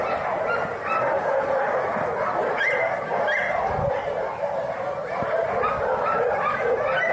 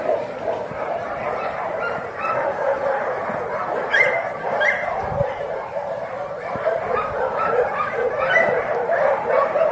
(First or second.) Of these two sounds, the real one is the first